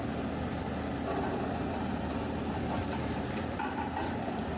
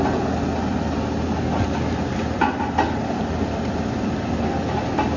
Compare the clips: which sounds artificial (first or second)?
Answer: first